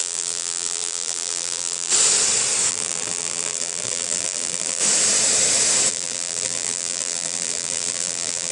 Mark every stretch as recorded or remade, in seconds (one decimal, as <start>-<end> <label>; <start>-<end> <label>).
0.0-1.9 remade; 1.9-2.7 recorded; 2.7-4.8 remade; 4.8-5.9 recorded; 5.9-8.5 remade